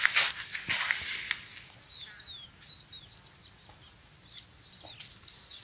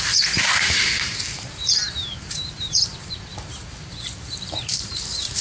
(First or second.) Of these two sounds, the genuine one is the first